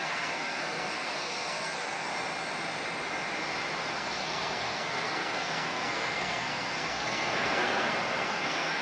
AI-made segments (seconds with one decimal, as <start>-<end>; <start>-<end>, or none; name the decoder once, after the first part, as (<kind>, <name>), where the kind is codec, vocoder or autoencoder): 0.0-2.1 (codec, SNAC); 3.9-8.8